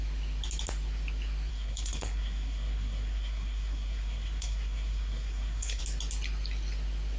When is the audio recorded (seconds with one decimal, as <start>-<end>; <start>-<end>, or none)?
0.0-1.5; 5.8-7.2